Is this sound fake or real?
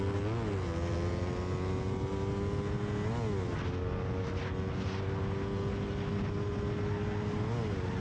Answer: real